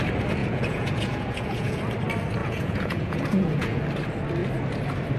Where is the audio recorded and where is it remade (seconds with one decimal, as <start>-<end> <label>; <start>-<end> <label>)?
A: 0.0-0.4 recorded; 0.4-1.8 remade; 1.8-2.4 recorded; 2.4-3.8 remade; 3.8-5.2 recorded